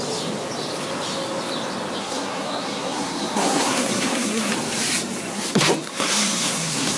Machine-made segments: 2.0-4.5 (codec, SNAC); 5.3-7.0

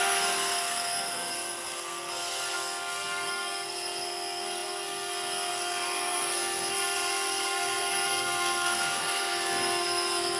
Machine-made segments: 0.0-10.4 (codec, SNAC)

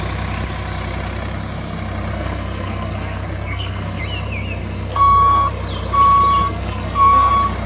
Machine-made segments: 2.1-4.0 (codec, SNAC); 4.6-5.5; 6.4-7.3